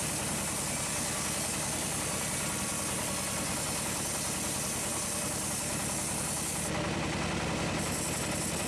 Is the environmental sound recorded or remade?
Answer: recorded